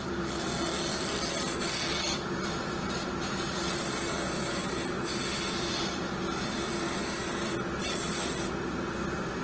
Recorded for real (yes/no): yes